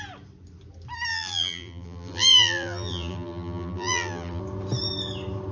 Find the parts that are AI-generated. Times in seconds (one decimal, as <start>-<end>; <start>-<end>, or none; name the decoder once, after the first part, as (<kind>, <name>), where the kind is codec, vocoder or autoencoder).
1.1-4.4 (vocoder, BigVGAN v2)